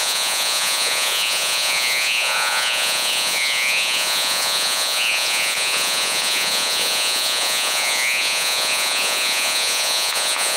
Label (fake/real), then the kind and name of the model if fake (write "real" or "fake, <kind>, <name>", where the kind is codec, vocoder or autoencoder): fake, vocoder, Vocos